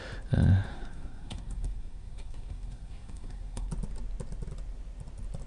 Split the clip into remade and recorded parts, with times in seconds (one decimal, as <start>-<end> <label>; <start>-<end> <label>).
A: 0.0-0.7 recorded; 0.7-3.7 remade; 3.7-5.5 recorded